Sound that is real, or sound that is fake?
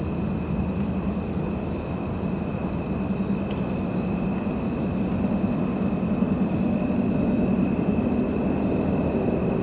real